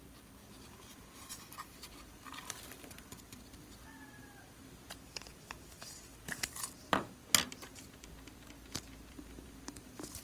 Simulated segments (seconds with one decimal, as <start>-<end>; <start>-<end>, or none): 0.0-7.2; 9.1-10.2